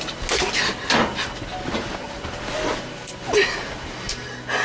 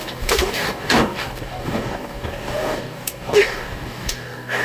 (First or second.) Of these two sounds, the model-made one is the second